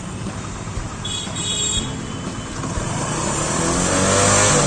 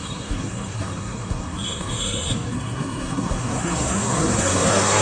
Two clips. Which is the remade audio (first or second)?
second